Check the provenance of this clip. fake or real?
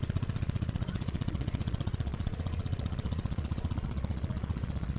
fake